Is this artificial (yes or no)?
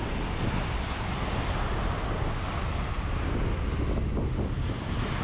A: no